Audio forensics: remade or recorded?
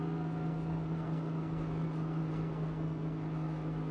remade